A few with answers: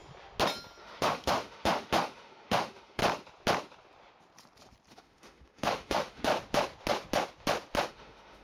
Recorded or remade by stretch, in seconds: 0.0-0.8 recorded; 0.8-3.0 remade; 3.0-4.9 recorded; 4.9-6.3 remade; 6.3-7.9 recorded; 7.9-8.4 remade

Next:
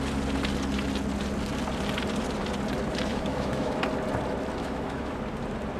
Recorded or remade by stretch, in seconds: 0.0-3.1 recorded; 3.1-3.8 remade; 3.8-4.6 recorded; 4.6-5.1 remade; 5.1-5.8 recorded

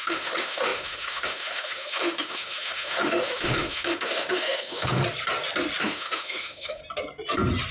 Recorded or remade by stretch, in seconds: 0.0-5.0 remade; 5.0-5.8 recorded; 5.8-6.8 remade; 6.8-7.7 recorded

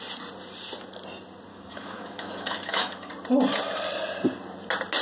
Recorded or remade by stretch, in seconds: 0.0-1.5 recorded; 1.5-3.1 remade; 3.1-5.0 recorded

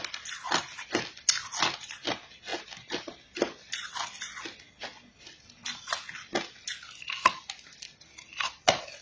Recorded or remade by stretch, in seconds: 0.0-9.0 recorded